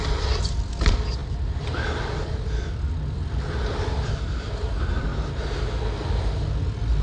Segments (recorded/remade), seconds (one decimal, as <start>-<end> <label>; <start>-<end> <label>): 0.0-7.0 recorded